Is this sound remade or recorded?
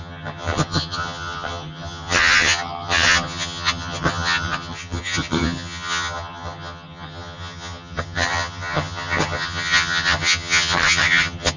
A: remade